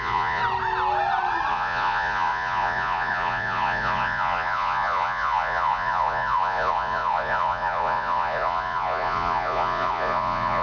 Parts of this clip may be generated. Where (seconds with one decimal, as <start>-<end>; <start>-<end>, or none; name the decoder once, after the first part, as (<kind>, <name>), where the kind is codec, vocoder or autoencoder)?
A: 0.0-0.4 (vocoder, Vocos); 1.5-10.6